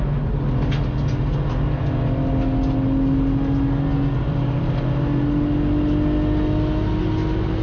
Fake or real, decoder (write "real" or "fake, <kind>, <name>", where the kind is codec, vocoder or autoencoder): real